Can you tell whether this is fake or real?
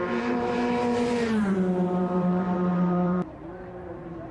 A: fake